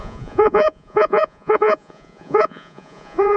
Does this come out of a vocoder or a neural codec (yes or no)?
yes